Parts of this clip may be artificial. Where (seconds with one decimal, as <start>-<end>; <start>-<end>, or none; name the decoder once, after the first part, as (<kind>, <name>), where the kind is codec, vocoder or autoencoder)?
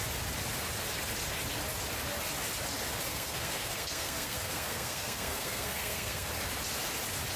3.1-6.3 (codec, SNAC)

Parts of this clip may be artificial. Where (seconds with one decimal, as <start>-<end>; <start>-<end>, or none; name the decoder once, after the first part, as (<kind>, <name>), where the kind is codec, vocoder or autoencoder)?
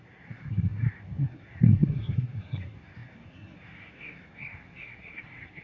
0.0-5.6 (codec, SNAC)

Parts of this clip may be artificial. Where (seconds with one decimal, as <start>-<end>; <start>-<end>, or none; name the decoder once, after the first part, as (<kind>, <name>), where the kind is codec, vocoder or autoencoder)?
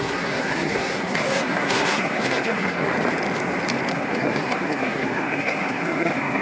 0.0-2.9 (codec, SNAC); 3.9-6.4